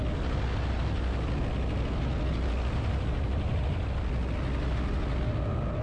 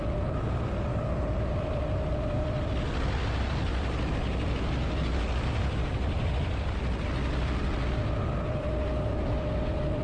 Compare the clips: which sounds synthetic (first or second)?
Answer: second